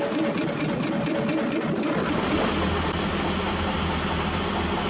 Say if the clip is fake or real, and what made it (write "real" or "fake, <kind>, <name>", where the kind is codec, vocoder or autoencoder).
real